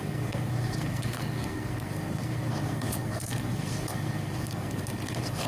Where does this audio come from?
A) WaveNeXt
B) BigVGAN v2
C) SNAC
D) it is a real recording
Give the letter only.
C